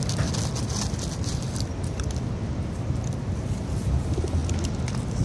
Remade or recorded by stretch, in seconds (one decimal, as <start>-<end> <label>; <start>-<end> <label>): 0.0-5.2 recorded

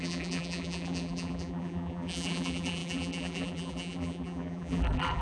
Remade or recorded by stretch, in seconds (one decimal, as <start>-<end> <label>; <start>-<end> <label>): 0.0-5.2 remade

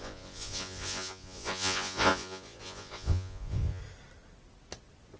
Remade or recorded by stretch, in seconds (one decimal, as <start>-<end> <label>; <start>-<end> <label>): 0.0-3.8 remade; 3.8-5.2 recorded

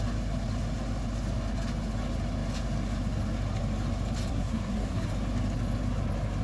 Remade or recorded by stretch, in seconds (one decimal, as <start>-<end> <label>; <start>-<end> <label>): 0.0-4.3 recorded; 4.3-5.1 remade; 5.1-6.4 recorded

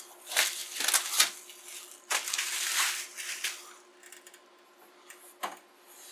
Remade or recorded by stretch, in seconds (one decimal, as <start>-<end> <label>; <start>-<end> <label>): 0.0-6.1 recorded